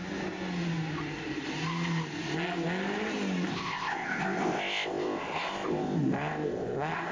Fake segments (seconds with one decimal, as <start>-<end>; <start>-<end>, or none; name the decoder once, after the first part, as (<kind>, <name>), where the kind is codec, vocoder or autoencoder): 3.5-7.1 (codec, ZipCodec)